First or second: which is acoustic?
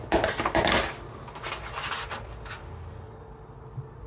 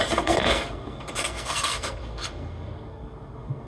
first